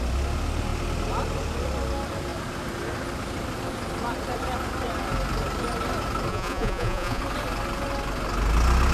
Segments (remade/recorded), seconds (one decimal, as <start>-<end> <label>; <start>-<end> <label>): 0.0-6.3 recorded; 6.3-7.2 remade; 7.2-8.9 recorded